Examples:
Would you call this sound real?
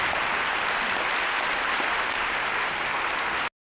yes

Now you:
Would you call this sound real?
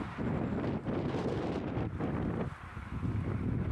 yes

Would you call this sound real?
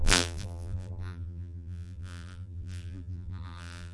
no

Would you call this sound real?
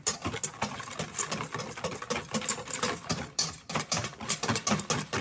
yes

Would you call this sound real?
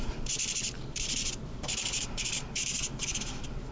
no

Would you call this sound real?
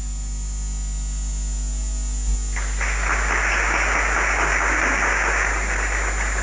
yes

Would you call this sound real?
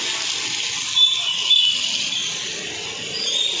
yes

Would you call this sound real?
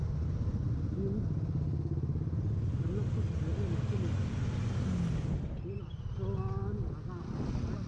yes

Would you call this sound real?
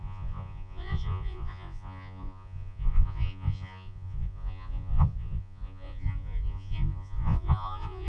no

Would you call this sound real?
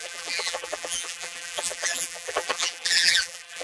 no